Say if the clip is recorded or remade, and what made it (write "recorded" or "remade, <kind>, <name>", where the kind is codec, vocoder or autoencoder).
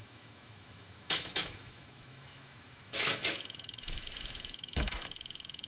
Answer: remade, autoencoder, DAC-VAE